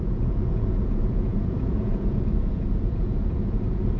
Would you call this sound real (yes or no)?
no